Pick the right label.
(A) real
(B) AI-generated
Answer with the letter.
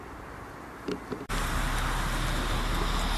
A